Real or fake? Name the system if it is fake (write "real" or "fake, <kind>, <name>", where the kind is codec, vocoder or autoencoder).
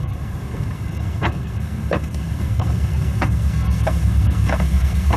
fake, codec, SNAC